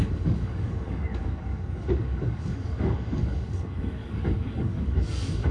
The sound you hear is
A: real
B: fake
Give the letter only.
B